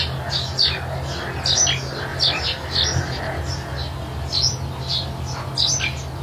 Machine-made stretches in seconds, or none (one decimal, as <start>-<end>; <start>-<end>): none